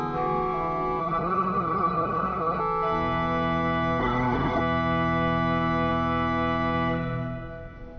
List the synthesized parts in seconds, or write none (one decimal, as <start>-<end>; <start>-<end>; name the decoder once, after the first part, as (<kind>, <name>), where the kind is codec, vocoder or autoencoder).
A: 1.0-2.6 (codec, SNAC); 4.0-4.6